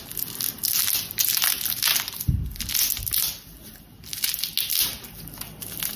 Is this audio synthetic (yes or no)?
no